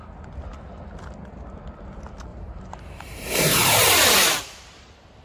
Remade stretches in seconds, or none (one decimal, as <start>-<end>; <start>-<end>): 2.3-4.2